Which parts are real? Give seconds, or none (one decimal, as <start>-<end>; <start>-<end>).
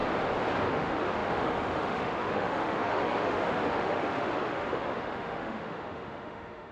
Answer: 0.0-0.7